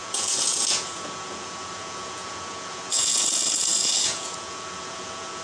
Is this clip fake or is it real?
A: fake